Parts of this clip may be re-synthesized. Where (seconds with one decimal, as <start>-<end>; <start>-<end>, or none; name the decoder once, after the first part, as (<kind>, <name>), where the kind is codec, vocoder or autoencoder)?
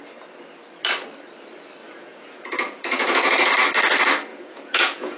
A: 1.8-3.5 (vocoder, Vocos); 4.3-5.2